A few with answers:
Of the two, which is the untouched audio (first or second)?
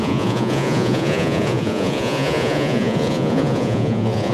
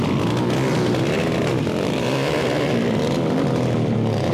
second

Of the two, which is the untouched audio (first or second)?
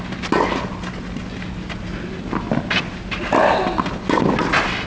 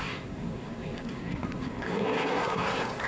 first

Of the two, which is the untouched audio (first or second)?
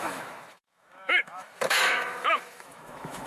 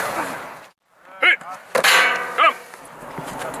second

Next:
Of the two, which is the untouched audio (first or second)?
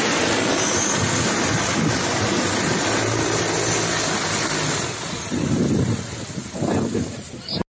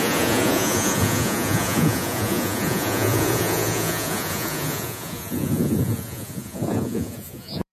first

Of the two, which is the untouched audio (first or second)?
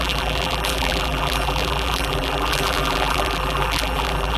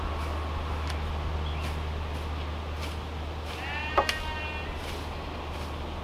second